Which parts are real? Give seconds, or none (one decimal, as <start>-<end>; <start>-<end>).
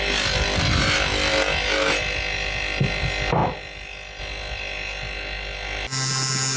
0.0-6.6